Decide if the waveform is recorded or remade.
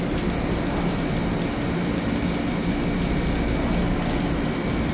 recorded